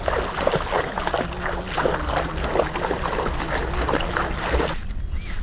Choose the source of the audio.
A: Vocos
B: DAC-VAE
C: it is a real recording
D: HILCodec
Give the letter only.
C